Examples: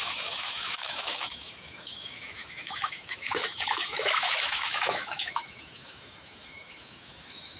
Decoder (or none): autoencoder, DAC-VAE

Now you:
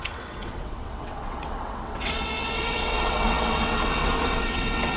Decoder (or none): vocoder, WaveNeXt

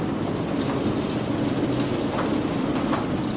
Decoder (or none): none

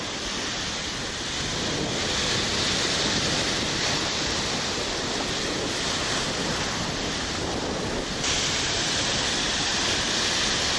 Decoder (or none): none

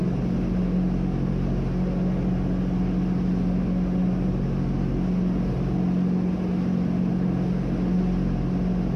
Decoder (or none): none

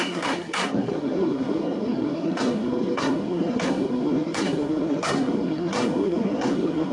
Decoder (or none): codec, SNAC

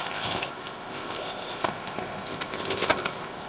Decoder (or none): codec, ZipCodec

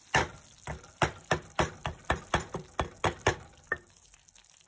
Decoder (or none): none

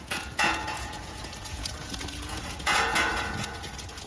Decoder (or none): vocoder, Vocos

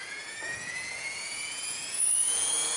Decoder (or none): vocoder, Vocos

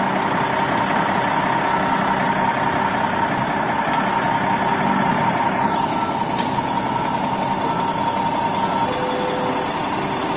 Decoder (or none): none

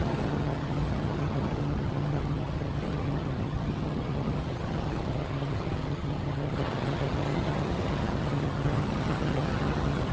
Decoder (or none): vocoder, HiFi-GAN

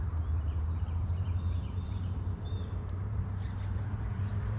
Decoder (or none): vocoder, BigVGAN v2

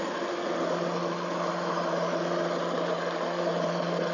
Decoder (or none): none